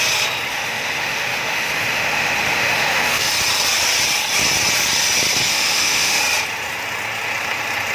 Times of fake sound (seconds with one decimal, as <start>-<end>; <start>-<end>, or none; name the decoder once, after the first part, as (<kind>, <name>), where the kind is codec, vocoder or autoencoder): 0.5-3.3 (autoencoder, DAC-VAE); 5.5-6.2

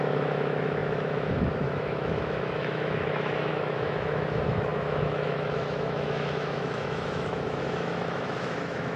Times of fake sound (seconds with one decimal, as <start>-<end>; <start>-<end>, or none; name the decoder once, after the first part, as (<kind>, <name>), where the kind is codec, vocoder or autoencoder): 0.0-9.0 (autoencoder, DAC-VAE)

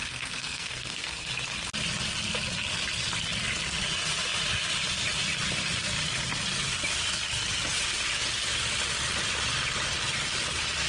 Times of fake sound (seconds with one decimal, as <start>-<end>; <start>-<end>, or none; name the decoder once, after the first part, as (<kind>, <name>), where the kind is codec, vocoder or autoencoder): 0.0-1.3 (codec, SNAC)

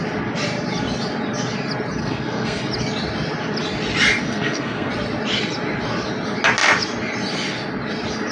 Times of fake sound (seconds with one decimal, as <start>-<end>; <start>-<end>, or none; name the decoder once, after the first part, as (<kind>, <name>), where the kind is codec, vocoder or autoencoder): 2.0-2.6 (codec, SNAC); 4.2-4.9

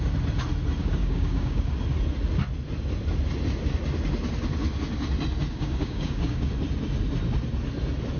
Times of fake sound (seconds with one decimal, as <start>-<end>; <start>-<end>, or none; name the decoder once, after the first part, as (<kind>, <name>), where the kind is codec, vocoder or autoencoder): 0.8-1.7 (codec, DAC); 5.5-6.5

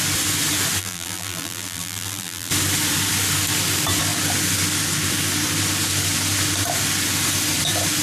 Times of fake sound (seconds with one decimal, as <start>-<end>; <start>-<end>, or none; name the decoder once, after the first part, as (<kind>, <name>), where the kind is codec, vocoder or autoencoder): 0.8-2.5 (vocoder, BigVGAN v2)

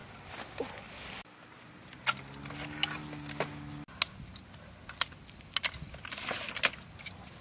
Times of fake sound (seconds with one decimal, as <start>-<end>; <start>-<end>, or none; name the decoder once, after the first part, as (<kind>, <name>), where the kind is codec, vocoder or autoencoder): none

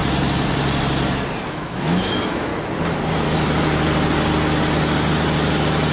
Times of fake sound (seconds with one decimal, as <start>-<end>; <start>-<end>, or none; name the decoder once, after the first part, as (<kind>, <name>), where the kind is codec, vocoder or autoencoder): 1.5-2.5 (autoencoder, DAC-VAE)